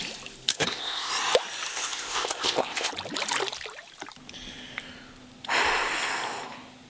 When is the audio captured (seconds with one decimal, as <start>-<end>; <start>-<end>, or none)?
0.0-0.5; 1.1-1.7; 2.9-6.9